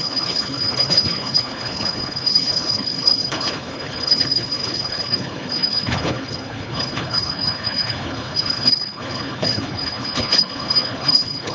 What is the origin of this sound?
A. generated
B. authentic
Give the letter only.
A